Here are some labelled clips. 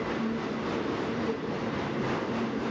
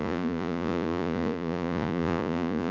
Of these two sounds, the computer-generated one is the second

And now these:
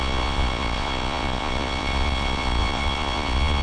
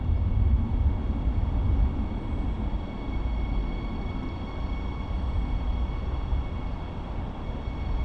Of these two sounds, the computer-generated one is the first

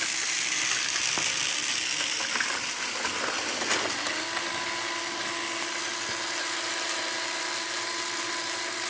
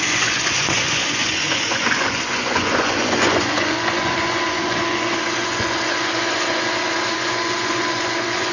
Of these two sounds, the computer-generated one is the second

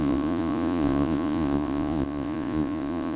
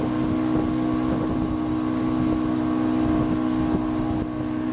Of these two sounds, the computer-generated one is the first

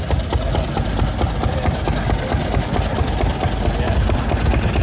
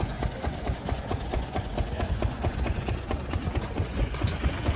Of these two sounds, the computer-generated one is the second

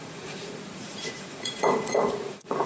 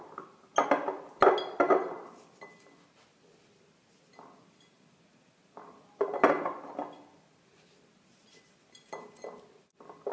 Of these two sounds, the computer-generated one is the first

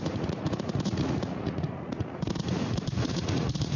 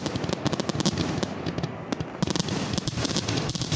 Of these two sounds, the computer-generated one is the first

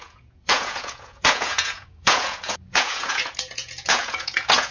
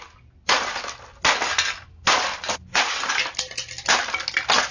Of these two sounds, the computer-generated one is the first